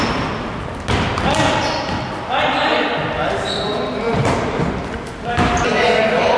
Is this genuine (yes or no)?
yes